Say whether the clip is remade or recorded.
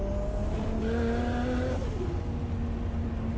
recorded